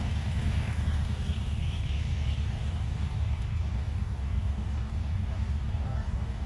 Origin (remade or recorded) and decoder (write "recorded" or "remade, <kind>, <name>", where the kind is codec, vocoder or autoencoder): remade, codec, DAC